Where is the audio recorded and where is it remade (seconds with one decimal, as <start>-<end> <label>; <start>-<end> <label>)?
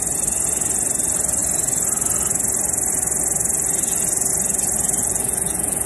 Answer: 0.0-5.0 recorded; 5.0-5.9 remade